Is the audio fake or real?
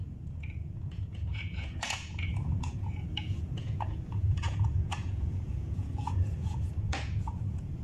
fake